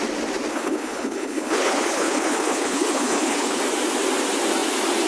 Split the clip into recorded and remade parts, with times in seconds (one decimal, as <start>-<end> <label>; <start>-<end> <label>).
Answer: 0.0-0.5 recorded; 0.5-3.6 remade; 3.6-5.1 recorded